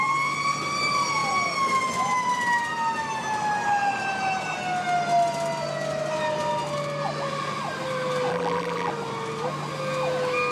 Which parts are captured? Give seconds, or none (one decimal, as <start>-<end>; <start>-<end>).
0.0-8.3; 8.9-10.5